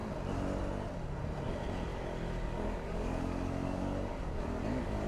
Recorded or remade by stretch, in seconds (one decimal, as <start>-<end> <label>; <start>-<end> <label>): 0.0-1.9 recorded; 1.9-5.1 remade